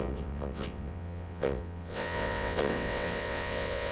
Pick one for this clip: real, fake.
fake